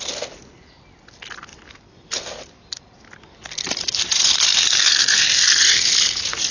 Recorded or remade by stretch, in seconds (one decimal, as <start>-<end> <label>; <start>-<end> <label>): 0.0-6.5 recorded